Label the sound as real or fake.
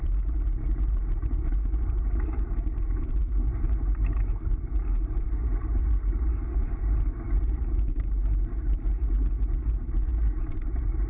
fake